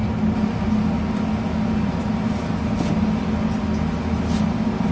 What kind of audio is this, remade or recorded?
recorded